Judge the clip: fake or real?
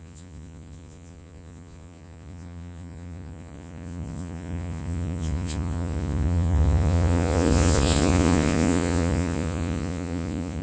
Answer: fake